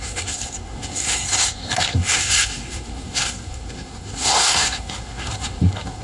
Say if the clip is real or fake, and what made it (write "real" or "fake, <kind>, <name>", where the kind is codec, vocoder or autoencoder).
fake, codec, SNAC